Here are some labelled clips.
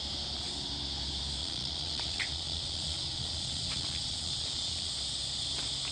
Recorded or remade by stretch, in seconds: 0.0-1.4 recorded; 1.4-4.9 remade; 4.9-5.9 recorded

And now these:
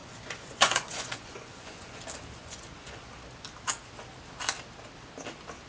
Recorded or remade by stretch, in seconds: 0.0-2.0 remade; 2.0-2.4 recorded; 2.4-3.1 remade; 3.1-5.7 recorded

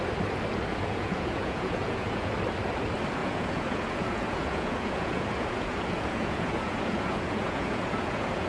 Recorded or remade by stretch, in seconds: 0.0-0.7 recorded; 0.7-2.3 remade; 2.3-3.2 recorded; 3.2-8.5 remade